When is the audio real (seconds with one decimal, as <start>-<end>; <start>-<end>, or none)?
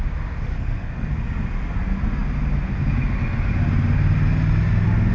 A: 0.0-0.5; 1.1-5.1